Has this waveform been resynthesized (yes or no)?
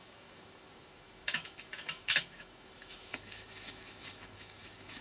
yes